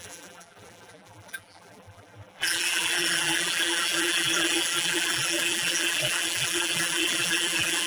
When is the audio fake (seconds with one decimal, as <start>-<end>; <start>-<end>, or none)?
0.0-7.9